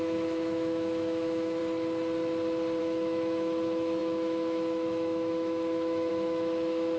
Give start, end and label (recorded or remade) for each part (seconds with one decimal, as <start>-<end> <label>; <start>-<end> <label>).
0.0-1.6 remade; 1.6-2.8 recorded; 2.8-7.0 remade

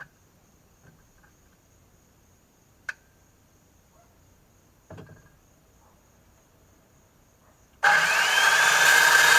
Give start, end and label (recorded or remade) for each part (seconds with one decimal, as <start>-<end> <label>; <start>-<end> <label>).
0.0-9.4 remade